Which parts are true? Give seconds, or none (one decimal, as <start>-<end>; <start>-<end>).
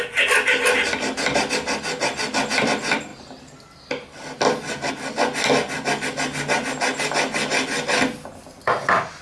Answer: 0.0-9.2